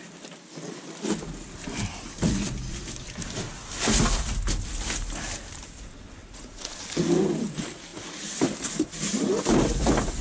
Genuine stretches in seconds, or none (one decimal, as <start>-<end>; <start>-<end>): 0.0-6.2; 6.8-10.2